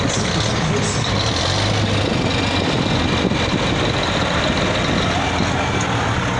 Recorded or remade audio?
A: recorded